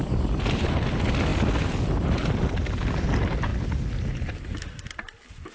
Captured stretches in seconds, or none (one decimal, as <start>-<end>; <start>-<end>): 0.0-5.5

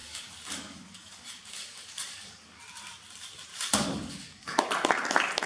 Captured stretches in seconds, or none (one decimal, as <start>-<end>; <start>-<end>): 2.6-3.5; 4.6-5.5

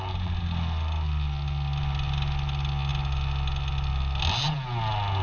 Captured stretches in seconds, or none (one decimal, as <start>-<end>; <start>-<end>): 0.0-5.2

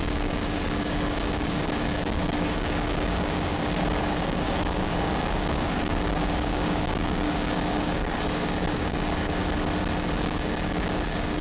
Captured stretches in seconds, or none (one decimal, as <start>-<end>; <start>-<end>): 9.4-10.0

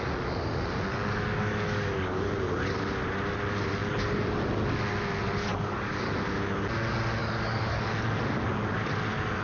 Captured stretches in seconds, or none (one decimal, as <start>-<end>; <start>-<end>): 0.0-0.9; 2.3-5.5; 6.1-7.2; 7.9-9.4

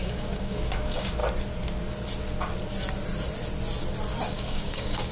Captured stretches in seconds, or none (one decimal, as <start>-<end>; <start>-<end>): 1.2-4.3